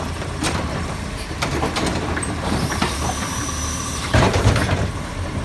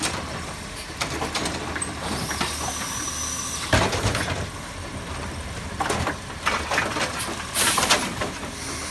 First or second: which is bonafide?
second